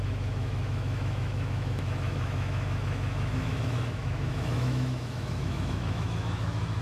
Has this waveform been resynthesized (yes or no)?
yes